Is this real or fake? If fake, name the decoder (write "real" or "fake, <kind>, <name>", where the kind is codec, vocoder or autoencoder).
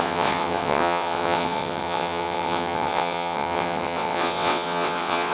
fake, vocoder, WaveNeXt